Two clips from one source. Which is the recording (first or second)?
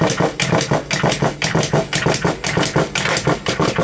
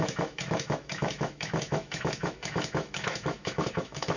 first